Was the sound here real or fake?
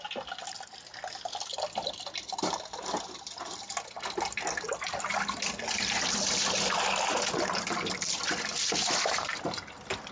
real